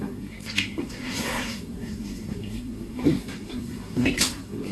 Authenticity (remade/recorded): remade